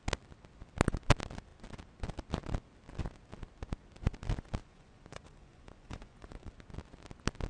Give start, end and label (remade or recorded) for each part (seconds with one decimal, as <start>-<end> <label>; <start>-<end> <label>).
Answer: 0.0-4.6 recorded; 4.6-6.5 remade; 6.5-7.5 recorded